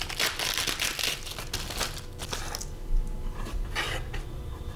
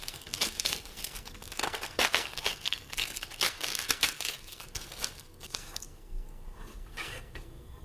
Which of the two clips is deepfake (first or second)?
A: second